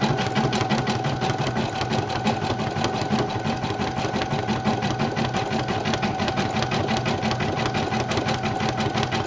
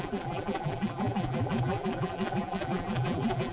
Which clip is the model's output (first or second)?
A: second